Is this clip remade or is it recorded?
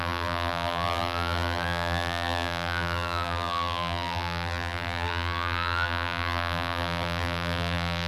remade